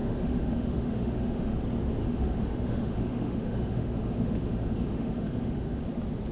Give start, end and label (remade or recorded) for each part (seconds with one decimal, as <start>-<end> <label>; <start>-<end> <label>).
0.0-1.6 remade; 1.6-2.0 recorded; 2.0-5.8 remade; 5.8-6.3 recorded